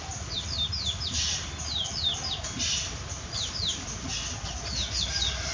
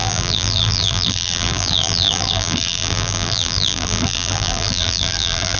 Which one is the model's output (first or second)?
second